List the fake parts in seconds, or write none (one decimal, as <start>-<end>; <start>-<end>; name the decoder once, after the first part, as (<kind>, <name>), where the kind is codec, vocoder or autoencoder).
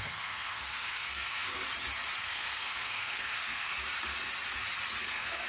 0.0-1.6 (codec, SNAC); 2.2-3.7; 5.0-5.5